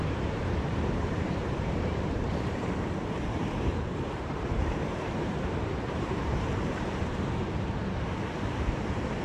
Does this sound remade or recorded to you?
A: remade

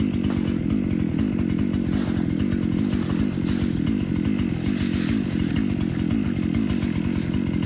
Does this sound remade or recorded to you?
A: recorded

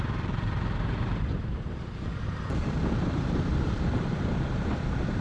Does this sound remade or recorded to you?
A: remade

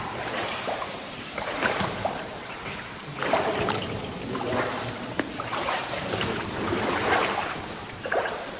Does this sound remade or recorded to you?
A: remade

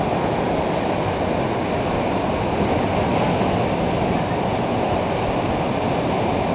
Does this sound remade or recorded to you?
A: recorded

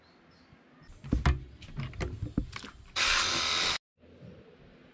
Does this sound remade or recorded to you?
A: recorded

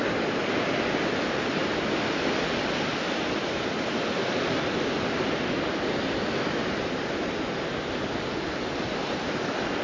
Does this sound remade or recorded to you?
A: recorded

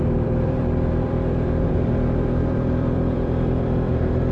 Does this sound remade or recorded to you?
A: remade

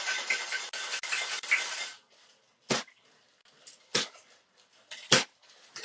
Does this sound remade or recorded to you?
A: recorded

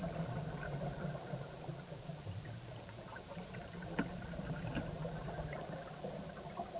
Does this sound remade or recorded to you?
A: remade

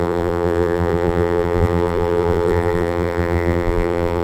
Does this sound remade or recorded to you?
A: remade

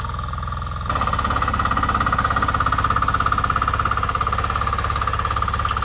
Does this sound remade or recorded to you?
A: recorded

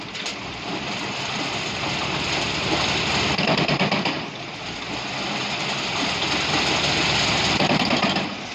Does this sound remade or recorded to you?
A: remade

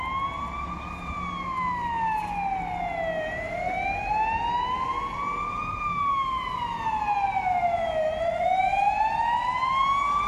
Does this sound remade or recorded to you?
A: recorded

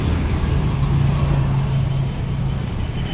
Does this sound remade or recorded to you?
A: recorded